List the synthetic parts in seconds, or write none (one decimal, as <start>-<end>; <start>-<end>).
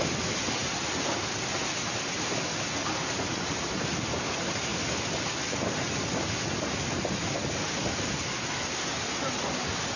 none